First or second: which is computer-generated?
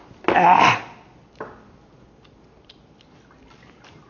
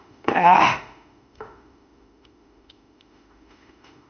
second